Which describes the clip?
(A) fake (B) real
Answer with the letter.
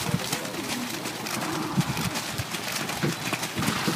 B